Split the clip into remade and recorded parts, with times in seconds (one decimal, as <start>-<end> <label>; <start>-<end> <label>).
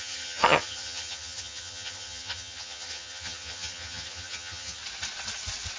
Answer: 0.0-4.8 remade; 4.8-5.8 recorded